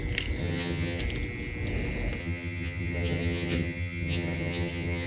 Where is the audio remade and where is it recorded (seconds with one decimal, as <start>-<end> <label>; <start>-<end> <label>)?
0.0-0.4 recorded; 0.4-1.0 remade; 1.0-2.2 recorded; 2.2-5.1 remade